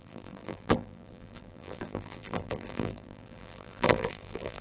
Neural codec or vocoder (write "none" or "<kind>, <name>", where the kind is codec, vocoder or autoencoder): vocoder, BigVGAN v2